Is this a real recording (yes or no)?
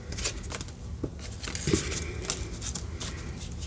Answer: yes